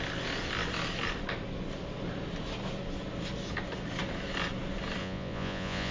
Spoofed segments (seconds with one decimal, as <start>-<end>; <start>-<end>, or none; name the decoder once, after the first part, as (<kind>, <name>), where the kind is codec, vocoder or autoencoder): 5.0-5.9 (vocoder, Vocos)